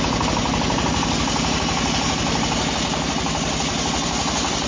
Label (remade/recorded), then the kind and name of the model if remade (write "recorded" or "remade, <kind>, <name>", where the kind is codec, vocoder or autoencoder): recorded